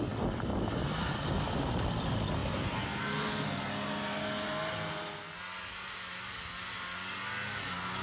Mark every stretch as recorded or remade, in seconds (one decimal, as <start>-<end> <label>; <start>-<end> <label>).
0.0-8.0 recorded